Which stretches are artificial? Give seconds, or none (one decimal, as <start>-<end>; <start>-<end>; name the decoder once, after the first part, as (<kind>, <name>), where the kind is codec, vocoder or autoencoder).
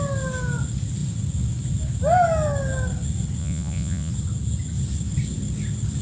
3.4-4.1 (vocoder, Vocos)